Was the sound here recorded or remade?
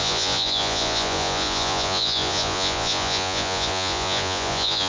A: remade